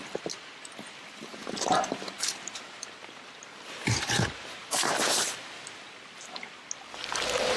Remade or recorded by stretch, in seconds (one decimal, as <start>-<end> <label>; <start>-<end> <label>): 0.0-1.3 recorded; 1.3-3.3 remade; 3.3-7.6 recorded